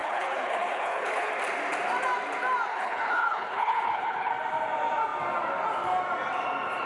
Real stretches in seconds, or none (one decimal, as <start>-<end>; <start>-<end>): 1.3-2.7; 4.3-6.9